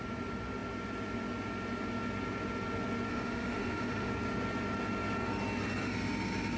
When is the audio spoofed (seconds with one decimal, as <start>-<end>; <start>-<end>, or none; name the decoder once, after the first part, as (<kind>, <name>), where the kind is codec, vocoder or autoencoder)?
3.1-4.1 (autoencoder, DAC-VAE)